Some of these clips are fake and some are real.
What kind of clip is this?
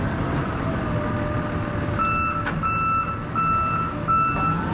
real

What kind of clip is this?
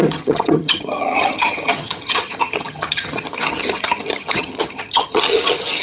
fake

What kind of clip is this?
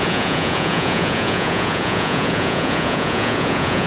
fake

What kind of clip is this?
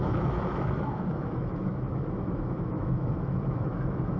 fake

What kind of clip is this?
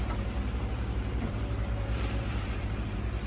fake